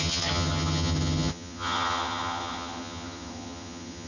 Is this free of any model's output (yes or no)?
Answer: no